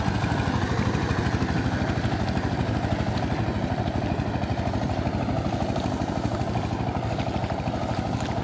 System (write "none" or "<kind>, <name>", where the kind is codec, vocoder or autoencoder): none